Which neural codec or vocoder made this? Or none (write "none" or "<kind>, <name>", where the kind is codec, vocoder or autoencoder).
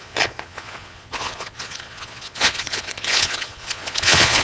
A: vocoder, Vocos